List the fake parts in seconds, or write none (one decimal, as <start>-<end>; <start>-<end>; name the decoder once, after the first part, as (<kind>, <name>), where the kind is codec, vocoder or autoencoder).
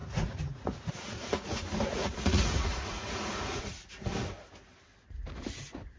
0.0-3.6 (vocoder, Vocos)